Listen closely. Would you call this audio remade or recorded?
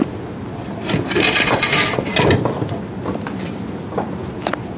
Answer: recorded